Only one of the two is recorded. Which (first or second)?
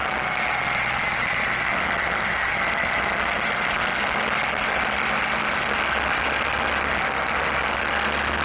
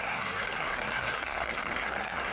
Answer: first